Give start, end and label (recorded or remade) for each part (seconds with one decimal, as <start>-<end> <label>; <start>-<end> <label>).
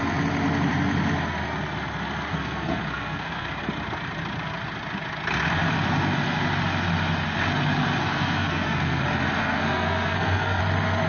0.0-2.3 recorded; 2.3-3.6 remade; 3.6-8.0 recorded; 8.0-9.0 remade; 9.0-9.4 recorded; 9.4-10.6 remade; 10.6-11.1 recorded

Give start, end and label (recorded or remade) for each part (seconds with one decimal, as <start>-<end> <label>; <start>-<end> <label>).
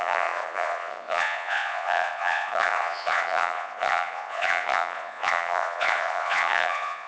0.0-7.1 remade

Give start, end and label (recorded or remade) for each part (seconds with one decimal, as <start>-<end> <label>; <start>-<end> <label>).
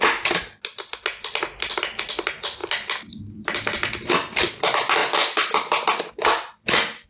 0.0-7.1 recorded